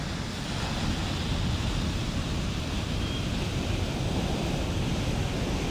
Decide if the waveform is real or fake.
real